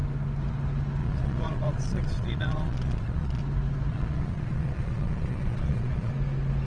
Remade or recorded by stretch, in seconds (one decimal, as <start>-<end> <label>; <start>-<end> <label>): 0.0-1.0 recorded; 1.0-3.4 remade; 3.4-3.9 recorded; 3.9-6.1 remade; 6.1-6.7 recorded

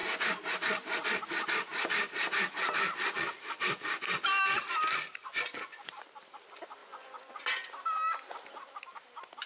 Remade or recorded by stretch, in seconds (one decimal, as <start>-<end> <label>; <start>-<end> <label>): 0.0-5.2 recorded; 5.2-5.9 remade; 5.9-6.8 recorded; 6.8-7.4 remade; 7.4-9.5 recorded

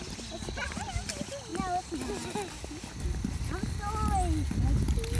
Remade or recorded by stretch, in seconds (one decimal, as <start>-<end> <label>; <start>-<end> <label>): 0.0-5.2 recorded

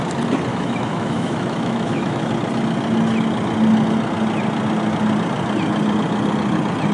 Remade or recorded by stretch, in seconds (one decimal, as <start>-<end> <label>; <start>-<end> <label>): 0.0-0.5 recorded; 0.5-2.3 remade; 2.3-6.9 recorded

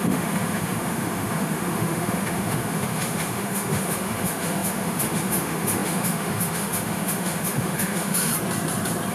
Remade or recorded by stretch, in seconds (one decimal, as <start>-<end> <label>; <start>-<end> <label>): 0.0-8.3 remade; 8.3-9.1 recorded